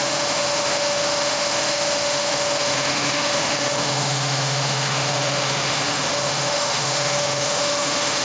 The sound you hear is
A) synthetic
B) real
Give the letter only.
A